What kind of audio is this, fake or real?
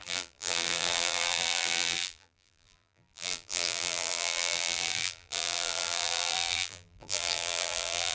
fake